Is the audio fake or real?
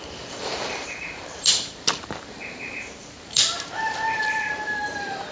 fake